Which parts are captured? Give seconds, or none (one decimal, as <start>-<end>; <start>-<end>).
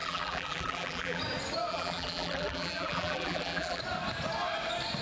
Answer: 1.2-1.7; 3.8-5.0